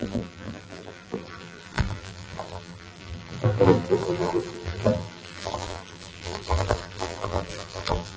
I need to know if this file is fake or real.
fake